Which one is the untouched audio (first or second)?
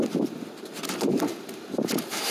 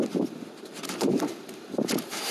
first